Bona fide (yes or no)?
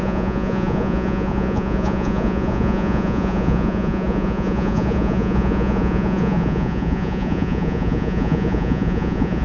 no